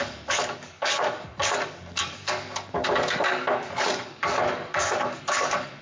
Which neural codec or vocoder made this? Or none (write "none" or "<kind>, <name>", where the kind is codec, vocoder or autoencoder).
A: codec, DAC